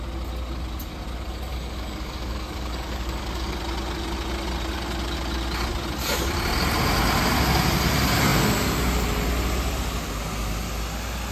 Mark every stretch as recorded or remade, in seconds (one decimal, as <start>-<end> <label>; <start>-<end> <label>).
0.0-1.5 recorded; 1.5-3.6 remade; 3.6-11.3 recorded